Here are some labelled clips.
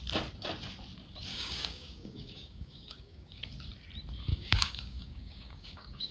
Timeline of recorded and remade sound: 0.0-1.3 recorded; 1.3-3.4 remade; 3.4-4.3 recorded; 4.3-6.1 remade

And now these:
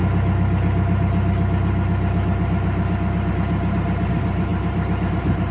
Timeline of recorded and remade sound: 0.0-5.5 recorded

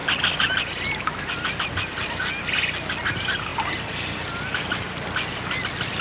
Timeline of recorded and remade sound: 0.0-6.0 recorded

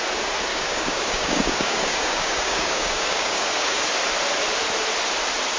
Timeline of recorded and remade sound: 0.0-0.5 recorded; 0.5-3.9 remade; 3.9-5.6 recorded

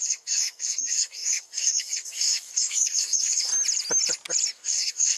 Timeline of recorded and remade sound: 0.0-3.5 remade; 3.5-4.5 recorded; 4.5-5.2 remade

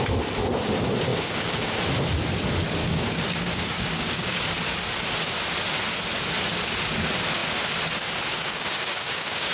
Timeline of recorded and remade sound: 0.0-1.1 recorded; 1.1-1.8 remade; 1.8-2.8 recorded; 2.8-4.4 remade; 4.4-8.3 recorded; 8.3-9.5 remade

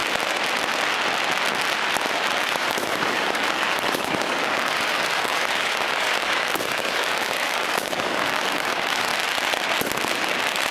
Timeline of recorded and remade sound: 0.0-2.4 recorded; 2.4-9.1 remade; 9.1-10.7 recorded

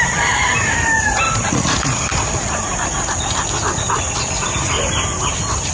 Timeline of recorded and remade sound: 0.0-5.7 recorded